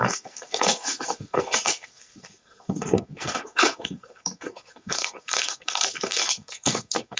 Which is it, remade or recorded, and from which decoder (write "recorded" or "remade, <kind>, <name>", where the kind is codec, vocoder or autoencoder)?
remade, codec, SNAC